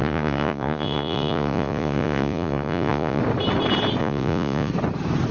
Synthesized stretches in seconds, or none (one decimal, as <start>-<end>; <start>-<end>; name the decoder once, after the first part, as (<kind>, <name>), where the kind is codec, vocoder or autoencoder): 0.0-3.2 (vocoder, Vocos); 4.0-4.7